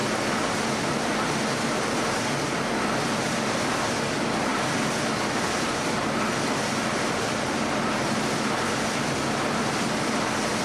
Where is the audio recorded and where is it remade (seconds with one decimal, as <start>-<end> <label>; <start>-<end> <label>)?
0.0-10.6 recorded